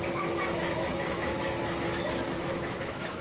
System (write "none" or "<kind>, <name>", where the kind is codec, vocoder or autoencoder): autoencoder, DAC-VAE